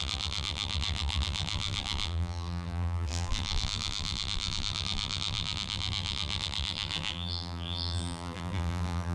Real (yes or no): no